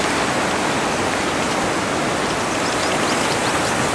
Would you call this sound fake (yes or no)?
no